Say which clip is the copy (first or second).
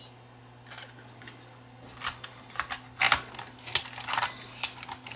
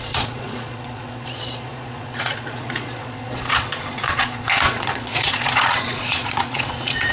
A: second